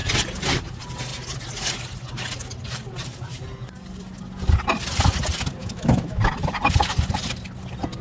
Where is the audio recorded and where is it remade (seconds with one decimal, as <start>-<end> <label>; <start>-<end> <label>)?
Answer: 0.0-5.6 recorded; 5.6-6.2 remade; 6.2-8.0 recorded